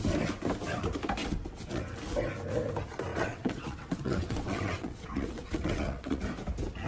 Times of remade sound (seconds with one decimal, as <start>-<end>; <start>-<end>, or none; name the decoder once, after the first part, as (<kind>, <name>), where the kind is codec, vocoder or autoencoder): 1.2-1.8 (vocoder, WaveNeXt); 3.1-6.2